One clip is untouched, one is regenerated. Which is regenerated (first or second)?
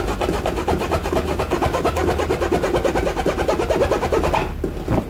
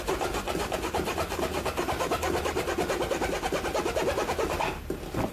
second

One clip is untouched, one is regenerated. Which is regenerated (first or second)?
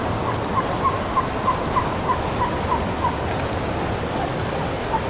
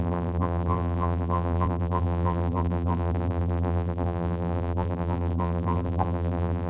second